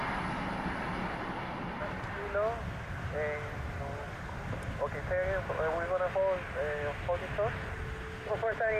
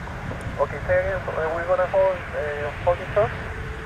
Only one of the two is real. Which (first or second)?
first